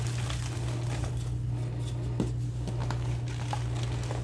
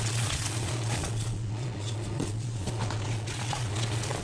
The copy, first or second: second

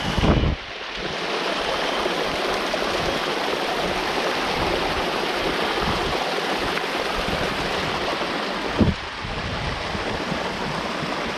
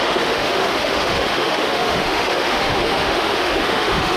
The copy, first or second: second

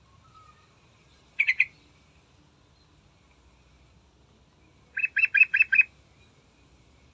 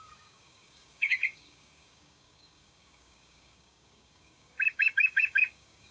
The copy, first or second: second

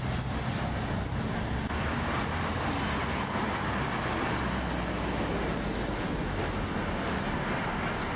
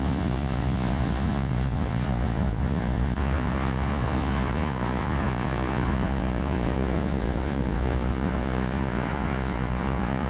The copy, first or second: second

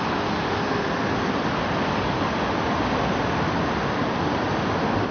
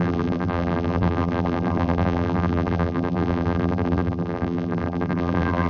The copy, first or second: second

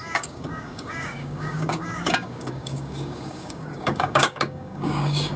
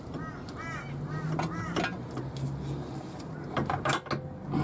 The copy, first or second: first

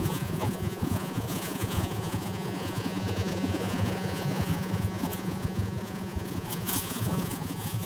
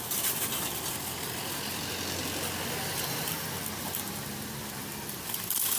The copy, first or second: first